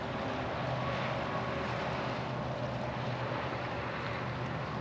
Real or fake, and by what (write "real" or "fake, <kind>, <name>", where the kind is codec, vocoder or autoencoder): real